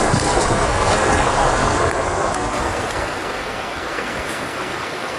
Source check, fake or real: fake